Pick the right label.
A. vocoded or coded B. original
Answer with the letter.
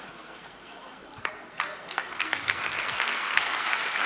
A